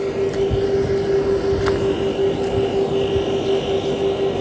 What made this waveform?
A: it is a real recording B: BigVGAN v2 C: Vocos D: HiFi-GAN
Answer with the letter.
A